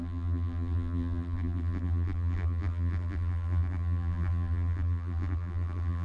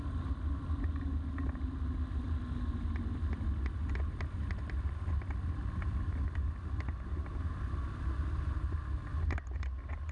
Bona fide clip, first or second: second